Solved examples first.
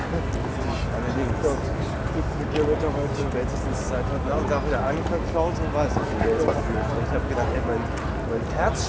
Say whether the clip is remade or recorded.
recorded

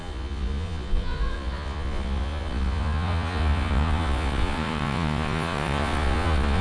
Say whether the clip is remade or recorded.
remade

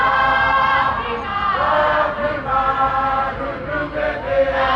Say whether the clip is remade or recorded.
recorded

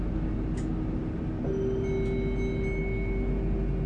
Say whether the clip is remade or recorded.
recorded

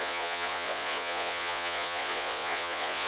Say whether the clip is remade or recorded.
remade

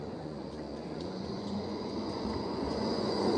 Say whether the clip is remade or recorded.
remade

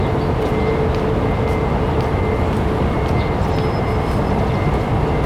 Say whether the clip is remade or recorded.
recorded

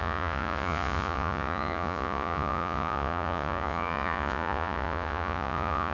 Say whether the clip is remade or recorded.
remade